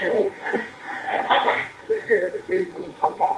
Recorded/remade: remade